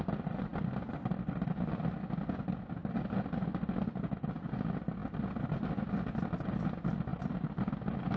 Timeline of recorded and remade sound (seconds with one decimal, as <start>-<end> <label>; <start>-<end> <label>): 0.0-7.1 recorded; 7.1-7.7 remade; 7.7-8.2 recorded